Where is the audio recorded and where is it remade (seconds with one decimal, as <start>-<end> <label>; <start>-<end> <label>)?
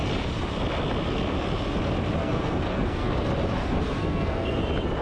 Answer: 0.0-2.2 recorded; 2.2-3.1 remade; 3.1-3.6 recorded; 3.6-4.6 remade; 4.6-5.0 recorded